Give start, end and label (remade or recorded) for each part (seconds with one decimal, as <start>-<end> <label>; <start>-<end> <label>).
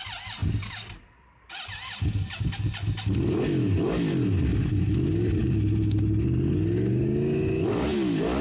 0.0-8.4 recorded